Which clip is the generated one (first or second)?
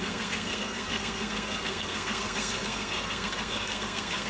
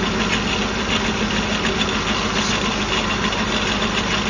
first